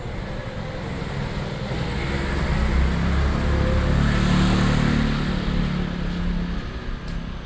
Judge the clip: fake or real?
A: real